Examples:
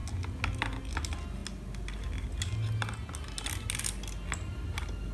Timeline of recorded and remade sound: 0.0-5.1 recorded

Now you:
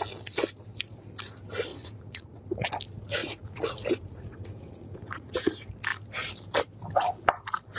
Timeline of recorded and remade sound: 0.0-1.7 recorded; 1.7-2.7 remade; 2.7-3.2 recorded; 3.2-5.5 remade; 5.5-7.8 recorded

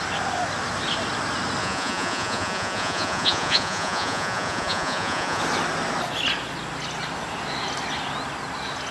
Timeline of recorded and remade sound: 0.0-1.6 recorded; 1.6-5.4 remade; 5.4-8.9 recorded

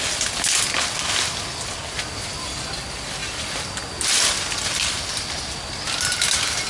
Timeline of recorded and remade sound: 0.0-6.7 recorded

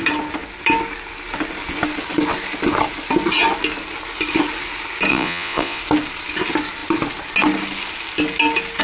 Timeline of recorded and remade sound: 0.0-5.1 recorded; 5.1-5.8 remade; 5.8-8.8 recorded

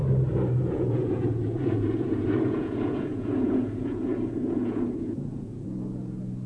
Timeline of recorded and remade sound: 0.0-0.6 recorded; 0.6-6.5 remade

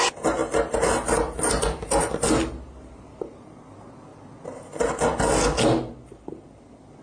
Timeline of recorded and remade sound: 0.0-7.0 recorded